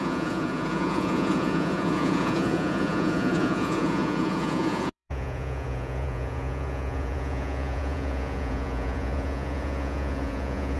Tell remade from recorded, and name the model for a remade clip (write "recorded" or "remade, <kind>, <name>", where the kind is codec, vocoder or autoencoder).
remade, vocoder, Vocos